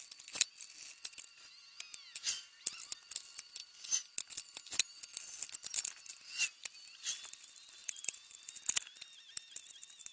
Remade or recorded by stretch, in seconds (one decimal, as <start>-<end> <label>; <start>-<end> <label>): 0.0-7.8 recorded; 7.8-8.5 remade; 8.5-10.1 recorded